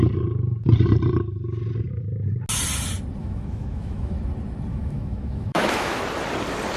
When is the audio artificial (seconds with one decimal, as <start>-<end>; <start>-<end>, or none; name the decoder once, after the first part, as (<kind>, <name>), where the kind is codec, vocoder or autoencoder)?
3.2-4.1 (autoencoder, DAC-VAE); 4.7-6.0